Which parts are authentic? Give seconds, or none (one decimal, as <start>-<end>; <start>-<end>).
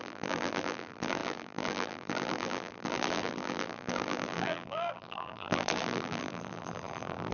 none